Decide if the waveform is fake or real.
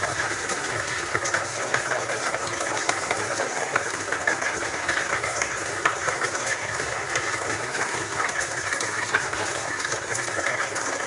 fake